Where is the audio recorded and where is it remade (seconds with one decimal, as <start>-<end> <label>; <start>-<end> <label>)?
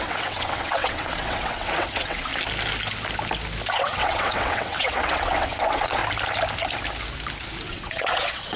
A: 0.0-2.3 remade; 2.3-3.7 recorded; 3.7-6.0 remade; 6.0-7.7 recorded; 7.7-8.6 remade